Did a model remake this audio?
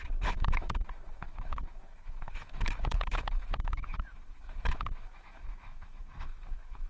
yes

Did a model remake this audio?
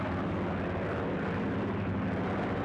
no